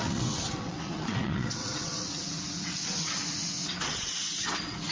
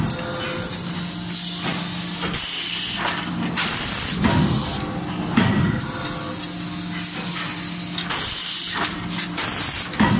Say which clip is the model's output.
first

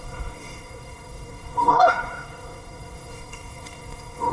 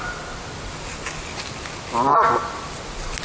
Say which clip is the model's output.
first